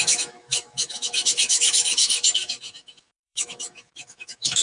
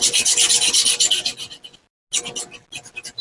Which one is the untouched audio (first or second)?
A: second